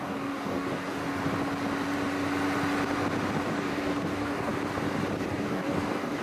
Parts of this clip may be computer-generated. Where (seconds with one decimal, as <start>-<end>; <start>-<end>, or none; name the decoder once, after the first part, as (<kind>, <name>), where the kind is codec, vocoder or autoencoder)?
0.0-1.0 (codec, DAC); 3.4-4.5; 5.3-6.2